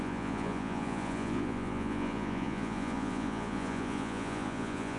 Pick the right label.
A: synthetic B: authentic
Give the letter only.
A